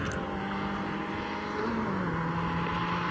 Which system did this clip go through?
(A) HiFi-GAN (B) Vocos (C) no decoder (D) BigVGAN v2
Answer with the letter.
C